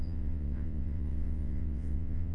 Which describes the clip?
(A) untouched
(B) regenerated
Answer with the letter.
B